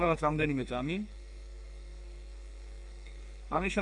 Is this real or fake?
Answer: fake